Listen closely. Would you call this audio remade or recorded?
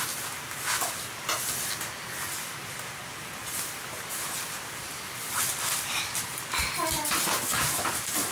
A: recorded